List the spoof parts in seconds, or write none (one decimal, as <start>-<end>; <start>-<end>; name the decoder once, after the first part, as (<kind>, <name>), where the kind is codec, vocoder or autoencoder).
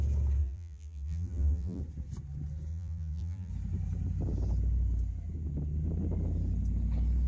0.4-1.8 (vocoder, BigVGAN v2); 2.7-3.5